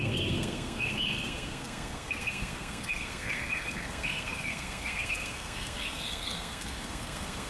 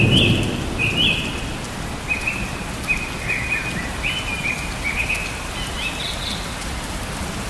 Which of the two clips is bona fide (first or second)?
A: second